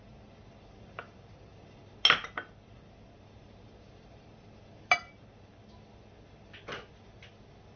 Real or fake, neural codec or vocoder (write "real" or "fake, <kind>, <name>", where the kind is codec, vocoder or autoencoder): real